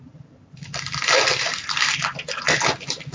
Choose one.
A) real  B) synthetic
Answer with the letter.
A